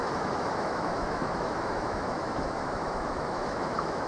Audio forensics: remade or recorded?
remade